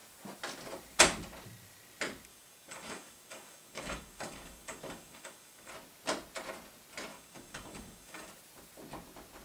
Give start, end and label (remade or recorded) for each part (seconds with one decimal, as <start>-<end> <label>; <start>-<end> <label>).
0.0-2.3 recorded; 2.3-5.7 remade; 5.7-7.1 recorded; 7.1-8.3 remade; 8.3-9.4 recorded